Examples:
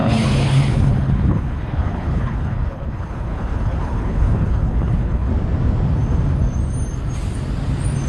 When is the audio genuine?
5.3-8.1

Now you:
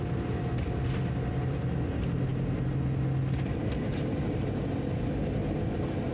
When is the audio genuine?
0.0-6.1

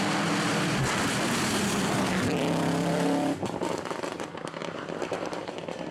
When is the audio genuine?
0.0-5.9